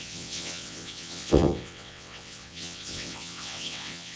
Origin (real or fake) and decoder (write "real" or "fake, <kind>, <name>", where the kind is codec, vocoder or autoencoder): fake, vocoder, WaveNeXt